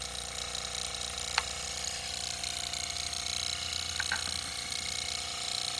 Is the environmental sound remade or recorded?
recorded